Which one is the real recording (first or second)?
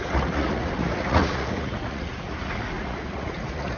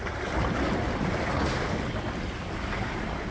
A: second